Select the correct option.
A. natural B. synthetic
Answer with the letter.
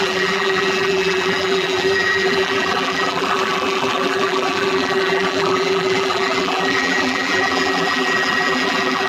B